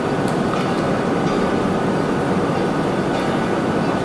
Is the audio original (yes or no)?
yes